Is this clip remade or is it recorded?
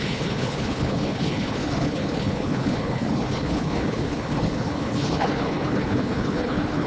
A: remade